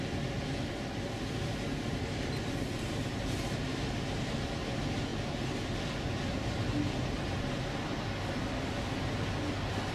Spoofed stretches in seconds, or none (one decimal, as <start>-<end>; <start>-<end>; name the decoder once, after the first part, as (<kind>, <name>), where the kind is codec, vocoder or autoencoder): none